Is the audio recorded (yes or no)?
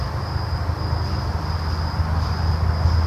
yes